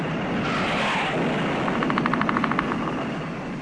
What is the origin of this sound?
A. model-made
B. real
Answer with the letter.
B